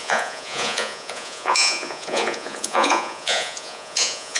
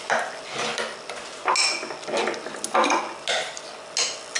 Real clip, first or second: second